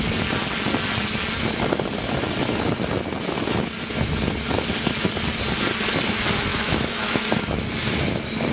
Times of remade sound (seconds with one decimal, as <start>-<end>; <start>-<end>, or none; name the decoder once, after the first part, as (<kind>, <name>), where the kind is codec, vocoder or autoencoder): 6.5-7.7 (autoencoder, DAC-VAE)